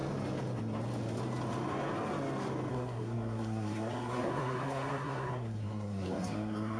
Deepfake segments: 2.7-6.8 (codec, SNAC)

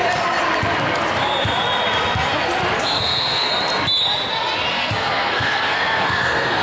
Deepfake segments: 2.8-3.5 (codec, SNAC); 4.7-6.6

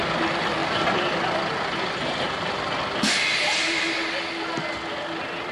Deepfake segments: none

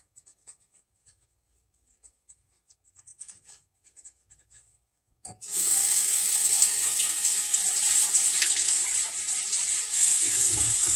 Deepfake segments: 0.0-7.6 (codec, SNAC); 8.4-8.8; 9.9-11.0

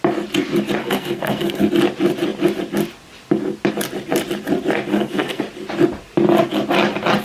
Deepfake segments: 0.8-1.7 (codec, SNAC); 4.9-5.4

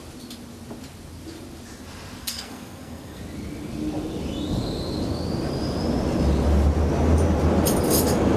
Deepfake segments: 2.2-3.2 (codec, SNAC)

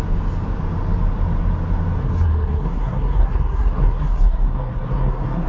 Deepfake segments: 2.0-5.5 (codec, SNAC)